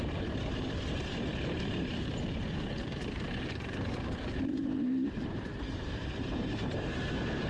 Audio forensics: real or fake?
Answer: fake